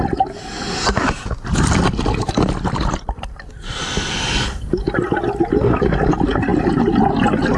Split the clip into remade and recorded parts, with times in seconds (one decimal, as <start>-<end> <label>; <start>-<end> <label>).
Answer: 0.0-7.6 recorded